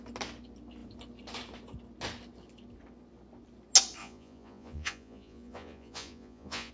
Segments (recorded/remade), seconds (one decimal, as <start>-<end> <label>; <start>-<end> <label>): 0.0-4.0 recorded; 4.0-6.7 remade